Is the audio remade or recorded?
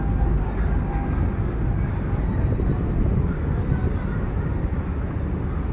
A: recorded